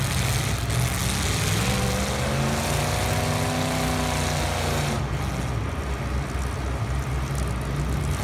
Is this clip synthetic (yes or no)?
no